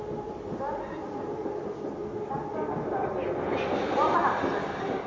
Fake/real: real